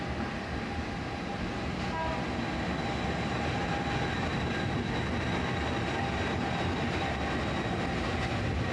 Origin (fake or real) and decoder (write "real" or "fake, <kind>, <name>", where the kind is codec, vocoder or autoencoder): real